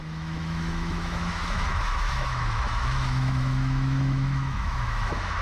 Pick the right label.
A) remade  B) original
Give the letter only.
A